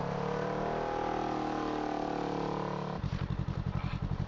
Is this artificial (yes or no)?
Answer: no